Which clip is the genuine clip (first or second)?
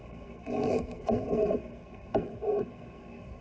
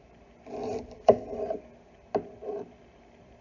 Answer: second